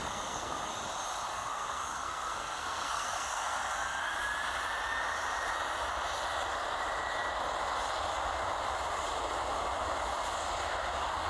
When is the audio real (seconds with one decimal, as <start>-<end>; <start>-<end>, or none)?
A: 0.7-1.3; 4.1-11.3